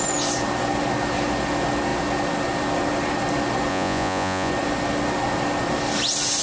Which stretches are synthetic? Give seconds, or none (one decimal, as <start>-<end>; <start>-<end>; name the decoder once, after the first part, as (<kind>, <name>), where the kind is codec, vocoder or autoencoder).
3.7-4.5 (vocoder, Vocos)